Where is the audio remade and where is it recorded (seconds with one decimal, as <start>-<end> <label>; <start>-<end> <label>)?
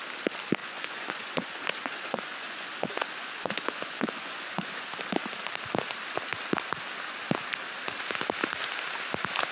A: 0.0-0.6 recorded; 0.6-4.7 remade; 4.7-9.5 recorded